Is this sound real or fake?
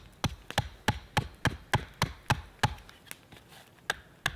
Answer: real